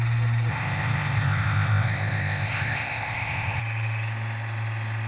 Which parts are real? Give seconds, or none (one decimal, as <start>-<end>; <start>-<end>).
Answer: 0.0-0.5; 3.6-5.1